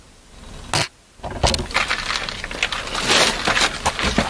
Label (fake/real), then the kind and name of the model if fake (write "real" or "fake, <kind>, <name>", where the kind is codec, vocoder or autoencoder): real